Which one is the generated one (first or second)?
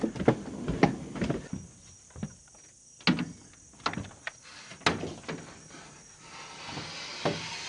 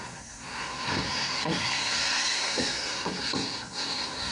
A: second